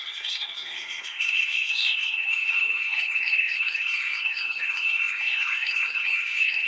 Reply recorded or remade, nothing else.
remade